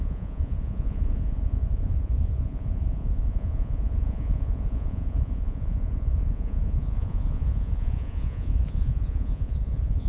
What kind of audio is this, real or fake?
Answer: fake